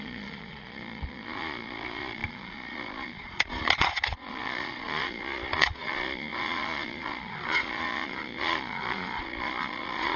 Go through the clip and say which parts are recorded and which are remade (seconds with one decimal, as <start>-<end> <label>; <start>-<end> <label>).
0.0-10.2 remade